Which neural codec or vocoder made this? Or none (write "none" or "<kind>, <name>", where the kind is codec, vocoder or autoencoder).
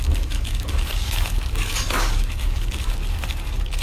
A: codec, DAC